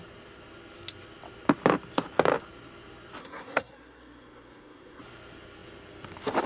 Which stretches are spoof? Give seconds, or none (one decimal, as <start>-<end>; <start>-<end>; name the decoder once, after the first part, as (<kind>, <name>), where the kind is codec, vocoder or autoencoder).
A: 3.2-5.0 (codec, SNAC)